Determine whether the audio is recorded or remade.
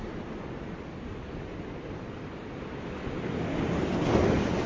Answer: recorded